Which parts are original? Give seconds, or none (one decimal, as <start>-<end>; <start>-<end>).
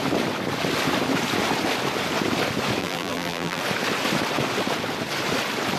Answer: 0.0-2.8; 3.6-5.8